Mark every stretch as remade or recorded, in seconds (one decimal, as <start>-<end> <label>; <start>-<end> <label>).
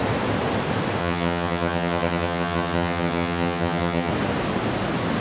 0.0-1.0 recorded; 1.0-4.1 remade; 4.1-5.2 recorded